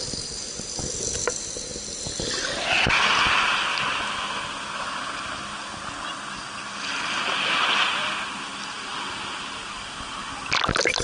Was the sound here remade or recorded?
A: recorded